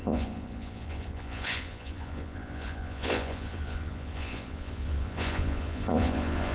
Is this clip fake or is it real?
fake